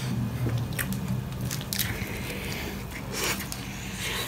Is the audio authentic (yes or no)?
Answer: yes